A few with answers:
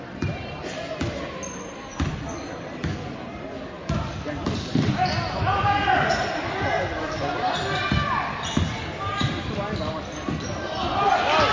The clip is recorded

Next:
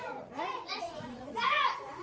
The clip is remade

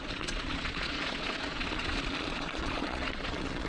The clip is remade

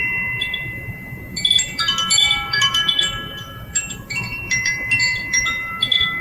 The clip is remade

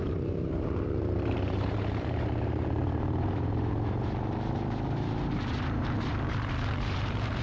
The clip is remade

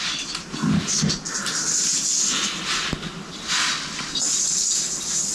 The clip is recorded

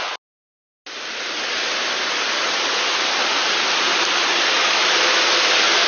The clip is recorded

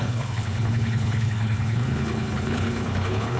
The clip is remade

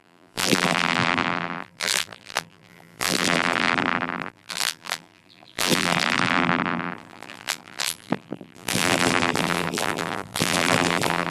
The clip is remade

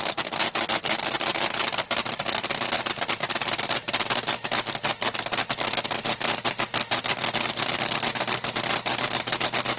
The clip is recorded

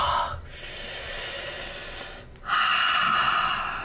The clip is recorded